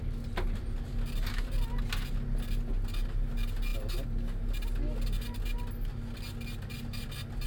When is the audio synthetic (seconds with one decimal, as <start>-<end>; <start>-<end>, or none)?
none